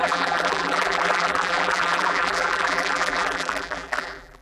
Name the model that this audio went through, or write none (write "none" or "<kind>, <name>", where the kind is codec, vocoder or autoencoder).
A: vocoder, BigVGAN v2